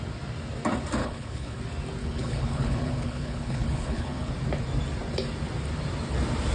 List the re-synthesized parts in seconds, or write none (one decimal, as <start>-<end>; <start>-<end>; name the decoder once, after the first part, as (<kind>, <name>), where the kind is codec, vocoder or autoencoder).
1.0-1.6 (codec, HILCodec); 2.0-4.3